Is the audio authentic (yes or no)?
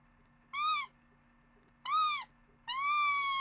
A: yes